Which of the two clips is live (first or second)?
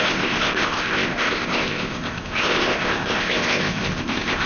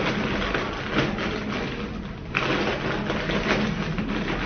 second